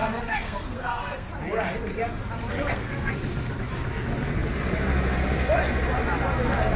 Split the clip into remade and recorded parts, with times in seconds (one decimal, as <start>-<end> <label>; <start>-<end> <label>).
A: 0.0-1.3 remade; 1.3-2.5 recorded; 2.5-3.1 remade; 3.1-6.8 recorded